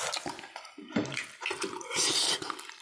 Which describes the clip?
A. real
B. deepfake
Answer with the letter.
A